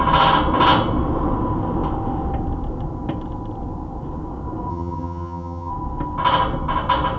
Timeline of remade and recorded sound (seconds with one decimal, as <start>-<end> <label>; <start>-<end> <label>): 0.0-4.7 recorded; 4.7-5.7 remade; 5.7-7.2 recorded